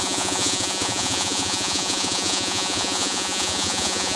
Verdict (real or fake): fake